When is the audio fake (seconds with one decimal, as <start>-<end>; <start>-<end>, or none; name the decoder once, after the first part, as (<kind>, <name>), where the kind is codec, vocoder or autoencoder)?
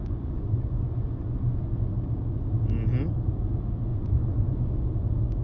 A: 0.0-1.9 (vocoder, Vocos); 3.9-4.7